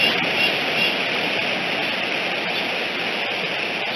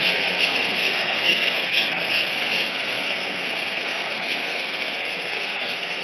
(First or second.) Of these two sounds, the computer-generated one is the second